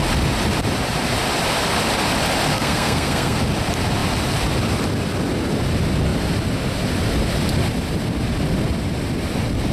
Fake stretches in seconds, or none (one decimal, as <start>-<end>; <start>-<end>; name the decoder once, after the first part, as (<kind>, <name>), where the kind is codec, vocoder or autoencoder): 2.5-3.4 (codec, SNAC)